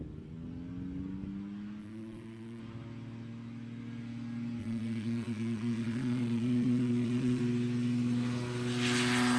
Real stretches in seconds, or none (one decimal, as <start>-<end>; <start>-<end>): 0.0-1.8; 2.6-4.6; 7.4-9.4